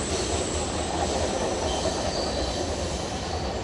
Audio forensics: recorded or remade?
recorded